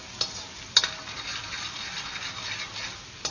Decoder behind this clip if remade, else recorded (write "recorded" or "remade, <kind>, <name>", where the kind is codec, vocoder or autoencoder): recorded